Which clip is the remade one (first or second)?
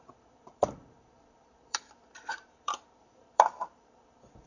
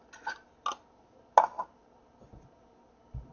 first